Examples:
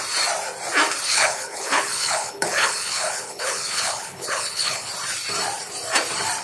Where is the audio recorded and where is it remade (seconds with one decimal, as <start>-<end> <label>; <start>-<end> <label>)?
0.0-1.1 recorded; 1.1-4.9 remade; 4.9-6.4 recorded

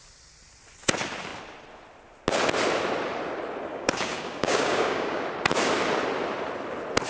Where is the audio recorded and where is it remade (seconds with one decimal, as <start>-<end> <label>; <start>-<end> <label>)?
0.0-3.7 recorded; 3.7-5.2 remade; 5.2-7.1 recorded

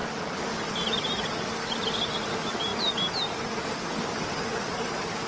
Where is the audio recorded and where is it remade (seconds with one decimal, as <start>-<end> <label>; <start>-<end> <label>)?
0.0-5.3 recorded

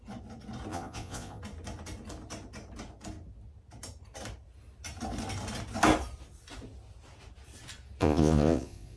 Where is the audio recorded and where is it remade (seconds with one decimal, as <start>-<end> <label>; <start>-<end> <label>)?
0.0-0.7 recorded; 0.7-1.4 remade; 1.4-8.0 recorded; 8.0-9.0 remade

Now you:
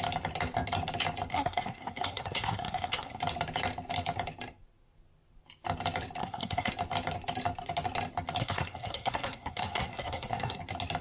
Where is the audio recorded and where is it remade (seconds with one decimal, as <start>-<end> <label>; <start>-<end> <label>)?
0.0-1.3 recorded; 1.3-3.2 remade; 3.2-6.2 recorded; 6.2-6.7 remade; 6.7-8.4 recorded; 8.4-10.6 remade; 10.6-11.0 recorded

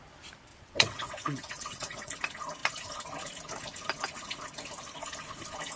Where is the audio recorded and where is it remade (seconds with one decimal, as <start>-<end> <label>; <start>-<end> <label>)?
0.0-0.5 recorded; 0.5-2.1 remade; 2.1-5.8 recorded

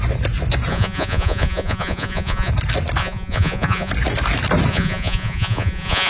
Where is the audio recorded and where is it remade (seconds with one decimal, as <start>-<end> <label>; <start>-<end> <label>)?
0.0-0.7 recorded; 0.7-2.5 remade; 2.5-3.0 recorded; 3.0-3.9 remade; 3.9-4.7 recorded; 4.7-6.1 remade

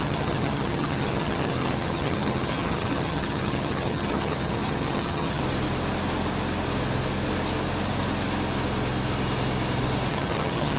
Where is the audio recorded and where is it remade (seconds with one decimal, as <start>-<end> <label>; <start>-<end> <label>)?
0.0-5.4 remade; 5.4-10.1 recorded; 10.1-10.8 remade